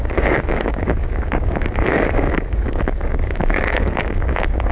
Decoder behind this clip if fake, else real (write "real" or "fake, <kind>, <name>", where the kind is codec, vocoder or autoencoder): fake, codec, DAC